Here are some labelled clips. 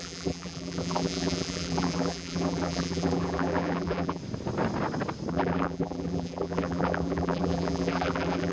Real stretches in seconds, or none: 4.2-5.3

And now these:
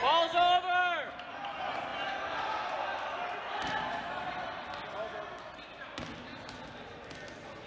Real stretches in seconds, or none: 0.0-7.7

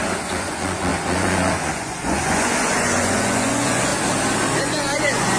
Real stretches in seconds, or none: 3.9-4.6

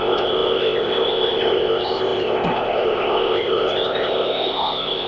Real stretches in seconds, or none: none